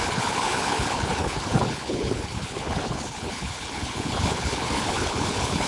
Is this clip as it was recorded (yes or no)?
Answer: no